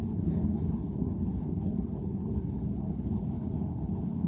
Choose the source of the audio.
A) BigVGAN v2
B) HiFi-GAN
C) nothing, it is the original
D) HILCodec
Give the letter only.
D